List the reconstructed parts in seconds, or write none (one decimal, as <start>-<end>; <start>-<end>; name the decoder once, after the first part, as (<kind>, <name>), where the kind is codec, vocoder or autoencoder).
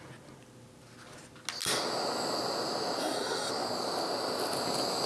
3.0-3.5 (codec, SNAC)